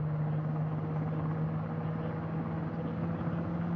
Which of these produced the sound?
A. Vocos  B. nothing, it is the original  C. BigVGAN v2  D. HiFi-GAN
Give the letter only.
B